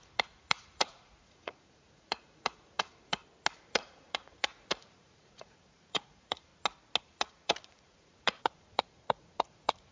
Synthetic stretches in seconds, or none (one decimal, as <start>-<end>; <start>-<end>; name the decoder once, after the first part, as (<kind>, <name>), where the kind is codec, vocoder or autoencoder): 0.0-3.2 (vocoder, Vocos); 3.7-6.5; 7.0-9.9